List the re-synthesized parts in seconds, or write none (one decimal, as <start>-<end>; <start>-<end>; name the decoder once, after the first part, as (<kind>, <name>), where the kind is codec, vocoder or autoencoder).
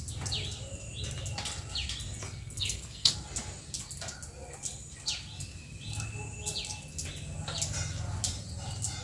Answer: 2.2-3.1 (codec, SNAC)